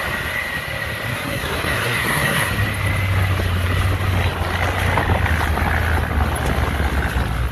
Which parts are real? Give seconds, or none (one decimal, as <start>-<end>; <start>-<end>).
0.0-1.1; 2.5-7.5